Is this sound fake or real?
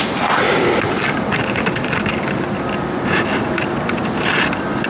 real